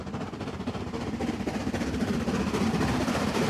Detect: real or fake fake